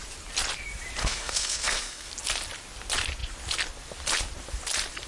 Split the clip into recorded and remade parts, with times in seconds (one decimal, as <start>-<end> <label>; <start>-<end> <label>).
0.0-1.0 recorded; 1.0-2.1 remade; 2.1-5.1 recorded